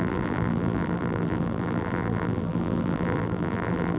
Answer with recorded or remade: remade